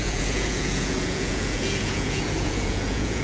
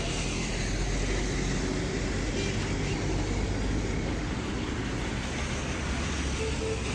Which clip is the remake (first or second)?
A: first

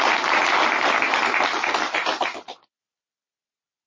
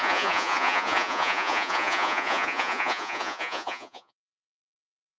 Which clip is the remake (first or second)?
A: second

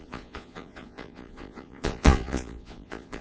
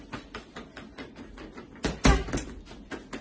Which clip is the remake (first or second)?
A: first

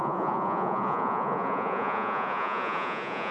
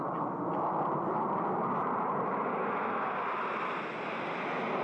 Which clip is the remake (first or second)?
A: first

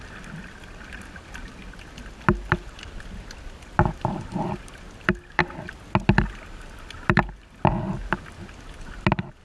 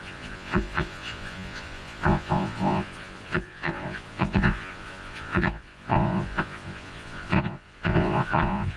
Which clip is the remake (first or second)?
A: second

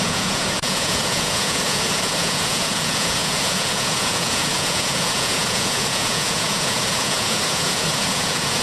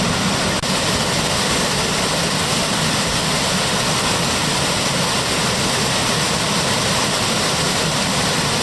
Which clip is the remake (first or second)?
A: first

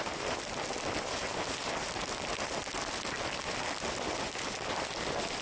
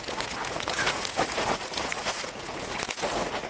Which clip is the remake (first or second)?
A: second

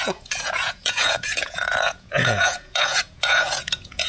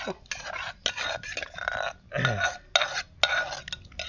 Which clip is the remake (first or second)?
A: first